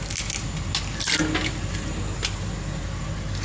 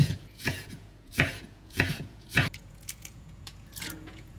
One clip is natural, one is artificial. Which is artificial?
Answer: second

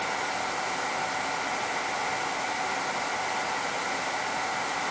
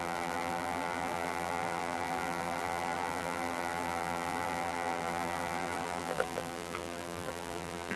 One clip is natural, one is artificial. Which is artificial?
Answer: second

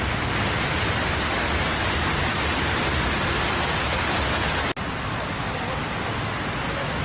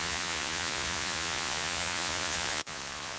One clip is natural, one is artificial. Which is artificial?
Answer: second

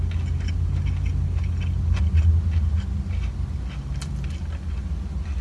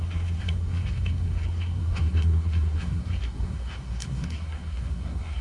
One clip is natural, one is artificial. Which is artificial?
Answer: second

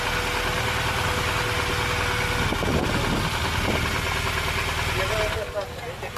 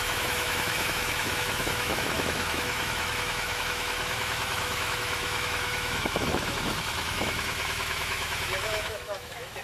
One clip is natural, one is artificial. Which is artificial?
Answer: second